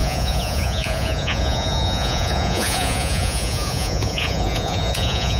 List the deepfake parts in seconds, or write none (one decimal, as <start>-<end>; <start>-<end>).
0.0-5.4